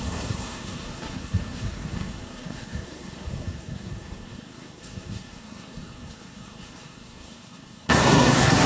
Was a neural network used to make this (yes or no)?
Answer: yes